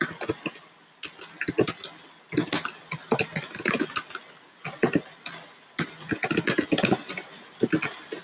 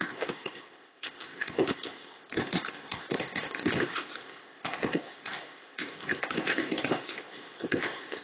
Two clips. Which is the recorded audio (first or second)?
first